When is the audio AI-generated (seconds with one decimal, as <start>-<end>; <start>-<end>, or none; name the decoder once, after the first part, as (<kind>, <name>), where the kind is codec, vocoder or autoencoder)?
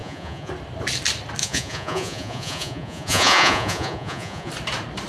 0.0-0.5 (vocoder, Vocos); 1.4-4.5